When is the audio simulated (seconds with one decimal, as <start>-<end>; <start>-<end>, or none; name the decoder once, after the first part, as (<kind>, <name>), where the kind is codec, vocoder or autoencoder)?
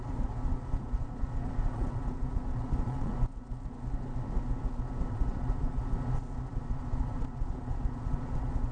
0.0-3.1 (vocoder, Vocos); 5.1-5.8; 6.5-8.7